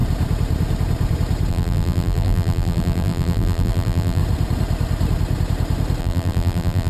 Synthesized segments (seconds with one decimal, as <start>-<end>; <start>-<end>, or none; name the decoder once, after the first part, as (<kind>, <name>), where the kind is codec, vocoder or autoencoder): 1.5-4.2 (vocoder, BigVGAN v2); 6.0-6.9